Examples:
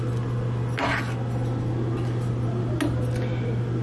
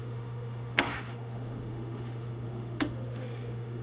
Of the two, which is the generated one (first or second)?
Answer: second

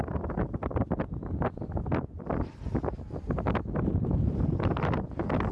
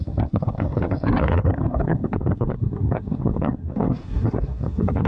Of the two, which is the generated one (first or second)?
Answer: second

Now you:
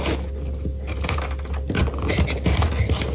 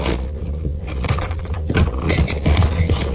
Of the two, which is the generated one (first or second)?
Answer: second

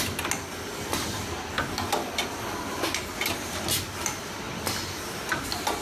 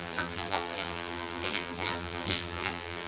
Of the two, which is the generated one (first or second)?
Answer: second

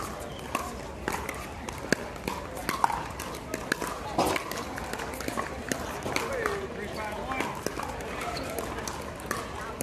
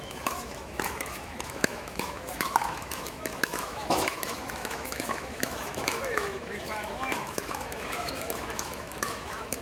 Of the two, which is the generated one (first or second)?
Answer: second